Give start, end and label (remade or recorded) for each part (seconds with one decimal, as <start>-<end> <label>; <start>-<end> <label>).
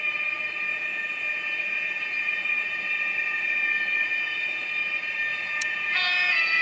0.0-0.7 recorded; 0.7-4.7 remade; 4.7-5.3 recorded; 5.3-6.6 remade